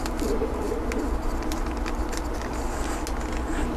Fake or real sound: real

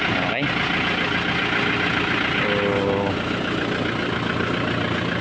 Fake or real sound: real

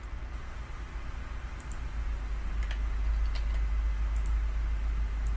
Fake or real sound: real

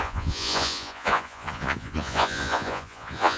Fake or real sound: fake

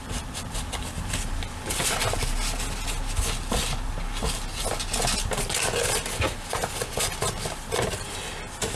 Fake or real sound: real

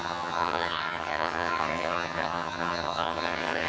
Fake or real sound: fake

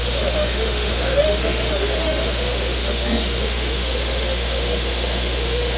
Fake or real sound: fake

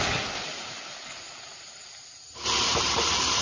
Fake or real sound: real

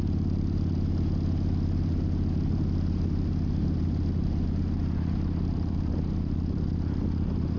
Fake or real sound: real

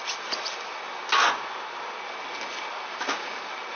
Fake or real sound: real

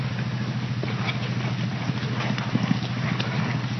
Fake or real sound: real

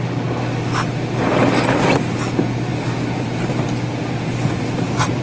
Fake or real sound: real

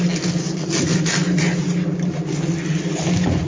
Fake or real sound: real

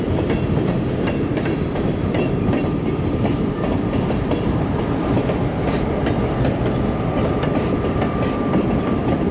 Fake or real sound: fake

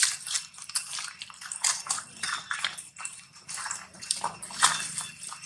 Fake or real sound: real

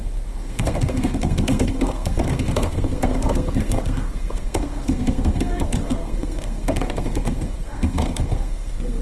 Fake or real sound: fake